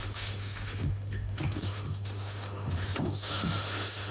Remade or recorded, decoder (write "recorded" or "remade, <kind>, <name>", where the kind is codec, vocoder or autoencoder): remade, autoencoder, DAC-VAE